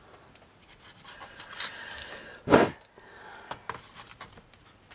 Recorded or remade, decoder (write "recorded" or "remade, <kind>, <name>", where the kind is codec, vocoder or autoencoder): recorded